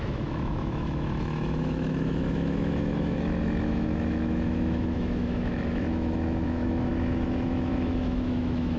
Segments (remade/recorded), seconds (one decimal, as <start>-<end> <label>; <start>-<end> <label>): 0.0-8.8 remade